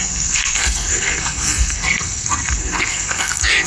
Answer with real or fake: fake